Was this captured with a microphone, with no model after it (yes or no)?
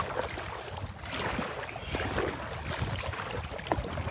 yes